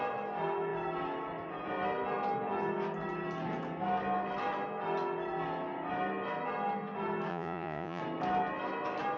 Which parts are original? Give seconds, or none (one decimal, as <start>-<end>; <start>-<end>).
0.0-7.3; 8.0-9.2